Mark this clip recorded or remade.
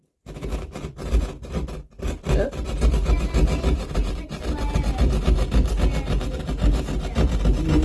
recorded